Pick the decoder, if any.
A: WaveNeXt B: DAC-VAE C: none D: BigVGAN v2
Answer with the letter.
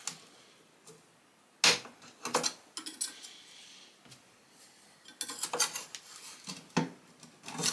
C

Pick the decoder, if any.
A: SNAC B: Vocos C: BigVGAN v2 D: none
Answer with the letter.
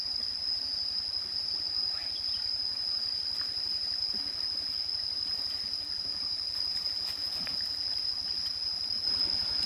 D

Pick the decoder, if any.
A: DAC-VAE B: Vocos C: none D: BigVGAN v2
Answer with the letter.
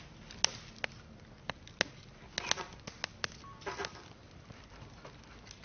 C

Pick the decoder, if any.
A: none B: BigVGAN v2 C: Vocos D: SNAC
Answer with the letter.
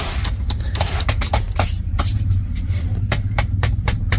B